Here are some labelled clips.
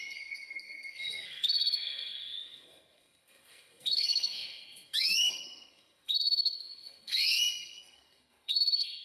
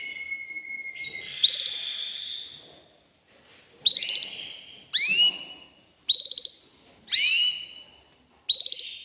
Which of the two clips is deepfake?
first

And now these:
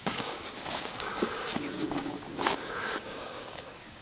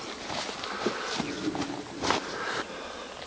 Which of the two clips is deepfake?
first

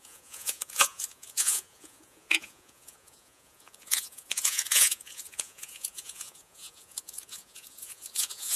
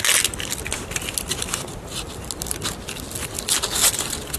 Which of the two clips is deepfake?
first